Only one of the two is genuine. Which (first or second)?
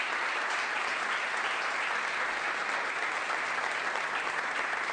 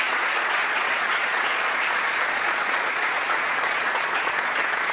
first